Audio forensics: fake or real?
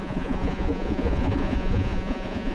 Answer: fake